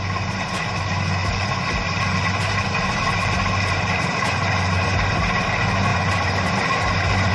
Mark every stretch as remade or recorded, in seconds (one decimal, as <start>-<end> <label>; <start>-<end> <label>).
0.0-1.2 recorded; 1.2-5.5 remade; 5.5-5.9 recorded; 5.9-7.3 remade